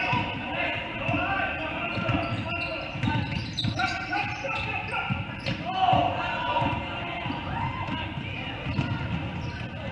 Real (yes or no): yes